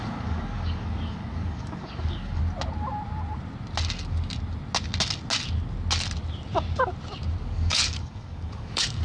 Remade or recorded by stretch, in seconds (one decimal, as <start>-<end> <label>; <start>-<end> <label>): 0.0-2.4 remade; 2.4-7.4 recorded; 7.4-9.0 remade